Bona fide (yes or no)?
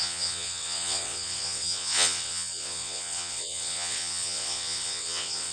no